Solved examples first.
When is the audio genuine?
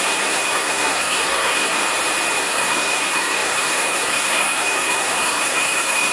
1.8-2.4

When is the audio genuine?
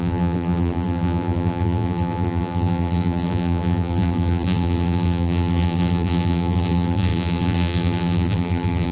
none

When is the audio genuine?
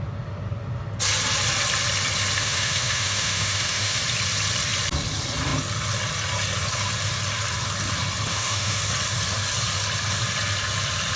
0.0-2.4; 4.0-8.3; 8.8-11.2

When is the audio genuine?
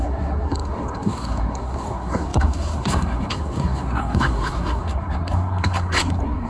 none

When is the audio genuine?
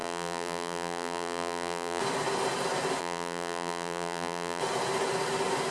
2.0-3.0; 4.6-5.7